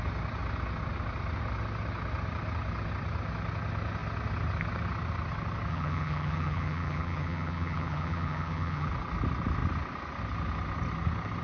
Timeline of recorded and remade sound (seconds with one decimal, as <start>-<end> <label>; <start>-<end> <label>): 0.0-5.7 recorded; 5.7-8.9 remade; 8.9-11.4 recorded